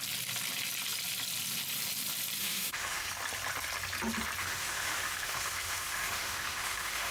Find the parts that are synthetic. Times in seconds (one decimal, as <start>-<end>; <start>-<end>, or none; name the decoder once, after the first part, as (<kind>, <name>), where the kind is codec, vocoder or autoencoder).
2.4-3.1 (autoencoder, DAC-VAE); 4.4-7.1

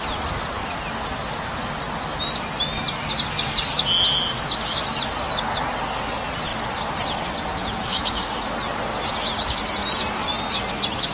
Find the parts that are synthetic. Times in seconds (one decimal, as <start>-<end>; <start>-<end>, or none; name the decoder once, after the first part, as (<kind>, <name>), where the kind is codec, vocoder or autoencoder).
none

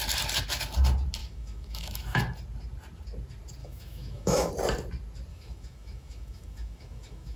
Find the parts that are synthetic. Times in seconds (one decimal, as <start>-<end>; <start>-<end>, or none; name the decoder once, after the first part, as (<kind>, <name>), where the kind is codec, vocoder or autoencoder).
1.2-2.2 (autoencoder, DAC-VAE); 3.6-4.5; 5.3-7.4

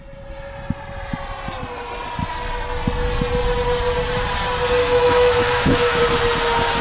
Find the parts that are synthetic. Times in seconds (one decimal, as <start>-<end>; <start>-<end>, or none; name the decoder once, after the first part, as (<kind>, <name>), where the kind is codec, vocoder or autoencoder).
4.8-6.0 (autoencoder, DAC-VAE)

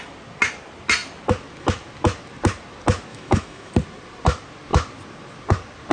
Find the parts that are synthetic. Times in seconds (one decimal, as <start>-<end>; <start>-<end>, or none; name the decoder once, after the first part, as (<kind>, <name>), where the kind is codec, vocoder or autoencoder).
3.1-3.7 (autoencoder, DAC-VAE)